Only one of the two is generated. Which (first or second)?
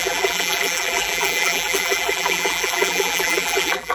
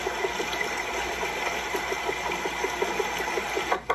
first